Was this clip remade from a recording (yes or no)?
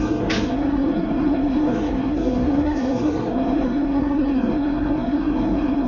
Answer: yes